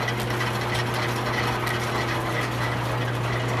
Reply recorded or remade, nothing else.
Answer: recorded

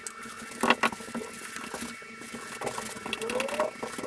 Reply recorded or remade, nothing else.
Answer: recorded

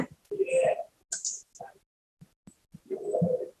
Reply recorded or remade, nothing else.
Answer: recorded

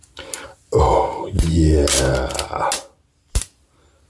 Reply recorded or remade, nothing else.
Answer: recorded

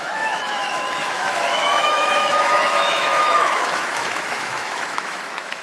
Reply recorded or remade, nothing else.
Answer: remade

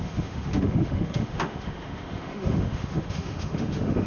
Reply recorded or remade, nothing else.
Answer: remade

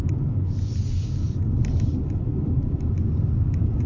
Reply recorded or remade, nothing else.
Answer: recorded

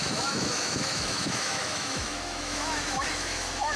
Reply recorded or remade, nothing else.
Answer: remade